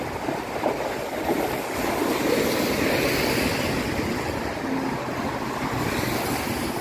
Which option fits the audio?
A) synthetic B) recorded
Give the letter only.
B